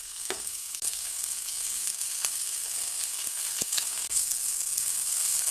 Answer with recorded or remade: remade